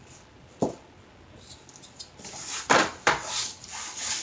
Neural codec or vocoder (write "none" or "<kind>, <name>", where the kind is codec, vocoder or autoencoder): none